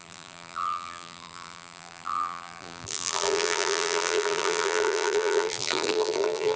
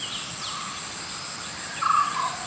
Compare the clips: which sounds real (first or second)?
second